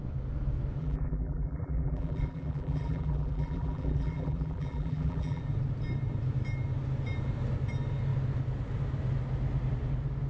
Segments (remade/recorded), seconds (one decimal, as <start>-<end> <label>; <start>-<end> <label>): 0.0-0.8 recorded; 0.8-5.4 remade; 5.4-10.3 recorded